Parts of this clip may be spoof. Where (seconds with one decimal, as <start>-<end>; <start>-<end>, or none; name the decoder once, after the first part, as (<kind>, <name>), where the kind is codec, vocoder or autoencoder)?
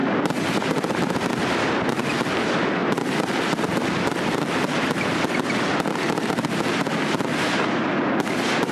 0.0-1.3 (vocoder, BigVGAN v2); 2.8-6.8